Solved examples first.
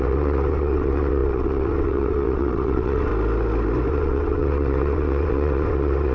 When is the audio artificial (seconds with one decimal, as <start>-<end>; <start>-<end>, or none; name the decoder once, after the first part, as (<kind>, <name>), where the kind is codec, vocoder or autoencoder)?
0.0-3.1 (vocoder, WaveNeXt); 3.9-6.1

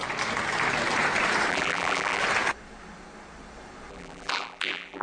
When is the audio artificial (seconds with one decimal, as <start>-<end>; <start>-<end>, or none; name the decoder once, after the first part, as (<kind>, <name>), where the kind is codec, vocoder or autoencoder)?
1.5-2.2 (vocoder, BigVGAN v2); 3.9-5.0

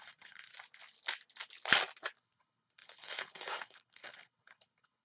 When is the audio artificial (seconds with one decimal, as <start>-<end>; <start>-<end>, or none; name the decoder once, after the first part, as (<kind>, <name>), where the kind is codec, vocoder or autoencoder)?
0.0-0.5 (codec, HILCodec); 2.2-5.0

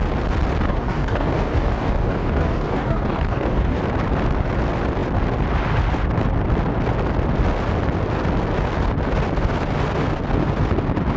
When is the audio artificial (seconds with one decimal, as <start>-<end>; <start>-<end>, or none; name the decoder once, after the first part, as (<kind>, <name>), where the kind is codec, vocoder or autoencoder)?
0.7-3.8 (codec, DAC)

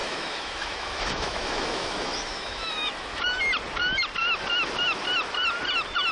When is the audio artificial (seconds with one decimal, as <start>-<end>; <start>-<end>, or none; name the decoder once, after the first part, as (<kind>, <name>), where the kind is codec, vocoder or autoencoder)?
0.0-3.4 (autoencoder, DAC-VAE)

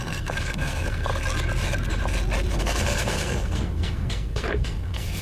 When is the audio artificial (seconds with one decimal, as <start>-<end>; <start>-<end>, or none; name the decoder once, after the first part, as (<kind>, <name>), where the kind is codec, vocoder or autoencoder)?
0.0-1.1 (codec, SNAC); 2.6-5.2

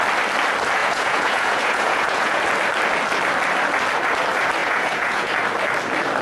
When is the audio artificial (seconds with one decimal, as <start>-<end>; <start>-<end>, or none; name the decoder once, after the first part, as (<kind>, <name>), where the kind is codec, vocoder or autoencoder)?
0.8-2.4 (vocoder, Vocos); 4.6-5.3

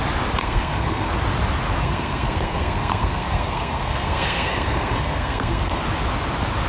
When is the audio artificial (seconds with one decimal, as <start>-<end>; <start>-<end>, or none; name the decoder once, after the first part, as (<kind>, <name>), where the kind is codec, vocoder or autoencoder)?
0.4-1.1 (codec, SNAC); 1.8-5.8